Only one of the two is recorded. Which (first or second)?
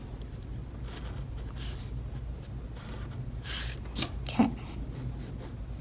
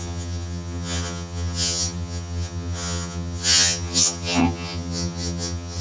first